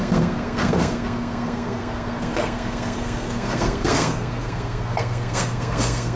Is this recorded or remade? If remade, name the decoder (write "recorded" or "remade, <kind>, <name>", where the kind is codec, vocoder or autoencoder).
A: remade, codec, SNAC